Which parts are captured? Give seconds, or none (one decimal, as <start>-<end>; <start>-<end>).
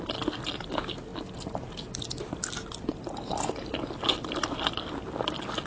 0.0-5.7